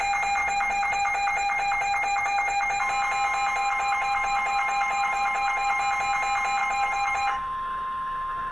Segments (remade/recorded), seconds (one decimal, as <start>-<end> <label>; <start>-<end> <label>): 0.0-0.4 recorded; 0.4-2.8 remade; 2.8-3.6 recorded; 3.6-5.8 remade; 5.8-6.6 recorded; 6.6-8.5 remade